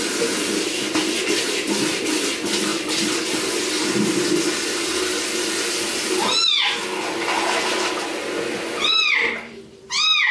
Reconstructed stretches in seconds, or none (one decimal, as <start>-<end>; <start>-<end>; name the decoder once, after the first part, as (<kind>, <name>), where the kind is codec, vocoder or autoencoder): none